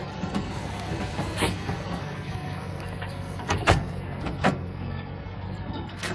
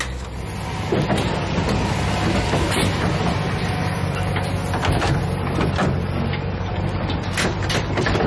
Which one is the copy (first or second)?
first